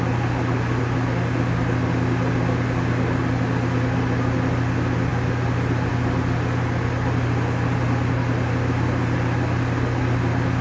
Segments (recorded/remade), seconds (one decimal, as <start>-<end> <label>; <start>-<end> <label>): 0.0-10.6 recorded